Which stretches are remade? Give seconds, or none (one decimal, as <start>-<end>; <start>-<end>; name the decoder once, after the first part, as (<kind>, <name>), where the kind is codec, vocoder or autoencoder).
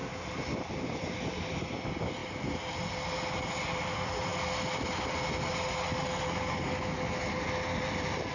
0.7-2.2 (vocoder, BigVGAN v2); 3.8-4.3; 7.8-8.3